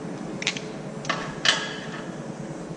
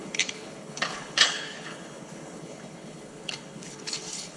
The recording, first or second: first